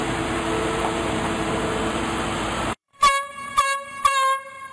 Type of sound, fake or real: fake